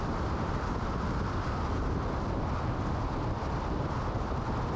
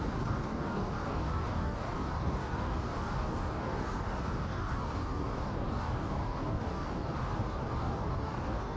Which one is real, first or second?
first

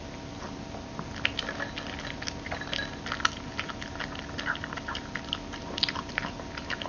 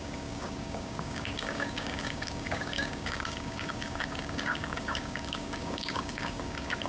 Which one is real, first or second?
first